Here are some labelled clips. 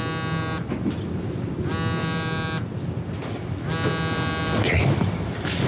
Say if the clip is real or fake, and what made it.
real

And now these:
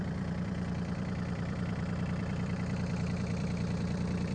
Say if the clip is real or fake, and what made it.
fake, vocoder, BigVGAN v2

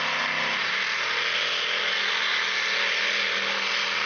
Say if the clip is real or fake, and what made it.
real